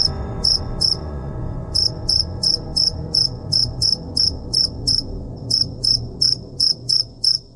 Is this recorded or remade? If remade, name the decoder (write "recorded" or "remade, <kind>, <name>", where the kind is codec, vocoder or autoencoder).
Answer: remade, vocoder, Vocos